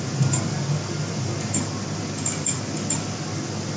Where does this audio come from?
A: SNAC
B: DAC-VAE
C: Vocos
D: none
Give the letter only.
D